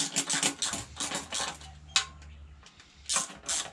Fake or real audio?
real